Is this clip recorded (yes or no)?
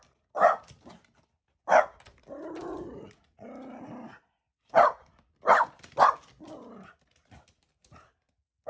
yes